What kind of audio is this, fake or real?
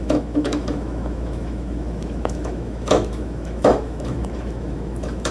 fake